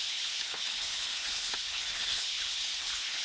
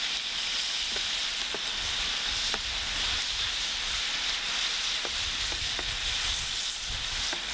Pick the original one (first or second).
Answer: second